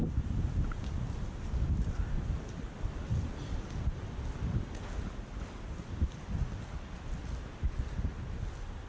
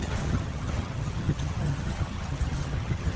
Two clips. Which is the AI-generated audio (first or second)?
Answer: second